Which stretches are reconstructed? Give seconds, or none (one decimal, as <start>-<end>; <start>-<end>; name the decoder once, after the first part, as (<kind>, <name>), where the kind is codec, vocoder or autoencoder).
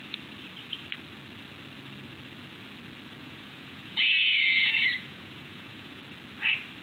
3.2-6.0 (vocoder, Vocos)